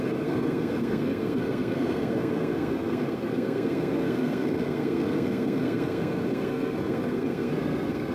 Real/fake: fake